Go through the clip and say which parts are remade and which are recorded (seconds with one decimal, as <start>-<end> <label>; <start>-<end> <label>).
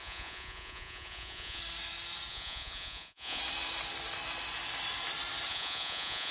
0.0-1.6 remade; 1.6-2.3 recorded; 2.3-3.4 remade; 3.4-5.5 recorded; 5.5-6.3 remade